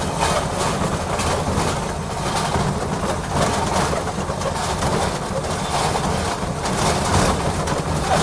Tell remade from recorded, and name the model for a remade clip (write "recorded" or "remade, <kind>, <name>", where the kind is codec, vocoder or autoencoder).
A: recorded